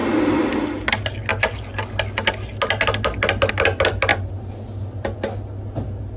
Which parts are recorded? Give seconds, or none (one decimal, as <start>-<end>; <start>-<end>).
0.0-6.2